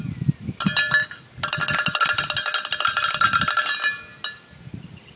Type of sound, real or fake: real